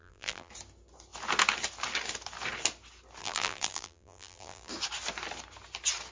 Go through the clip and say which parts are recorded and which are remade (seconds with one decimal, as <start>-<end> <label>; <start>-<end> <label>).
0.0-0.5 remade; 0.5-3.2 recorded; 3.2-4.7 remade; 4.7-6.1 recorded